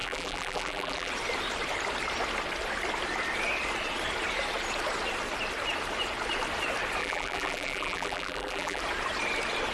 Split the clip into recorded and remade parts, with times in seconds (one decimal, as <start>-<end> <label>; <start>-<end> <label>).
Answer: 0.0-1.1 remade; 1.1-7.0 recorded; 7.0-8.8 remade; 8.8-9.7 recorded